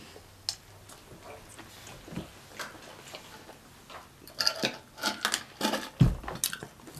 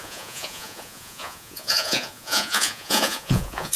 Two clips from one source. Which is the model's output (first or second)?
second